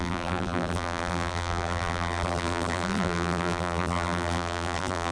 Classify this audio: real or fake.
fake